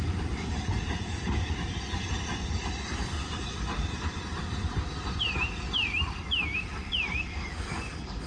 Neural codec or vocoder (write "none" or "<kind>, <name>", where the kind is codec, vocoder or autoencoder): vocoder, BigVGAN v2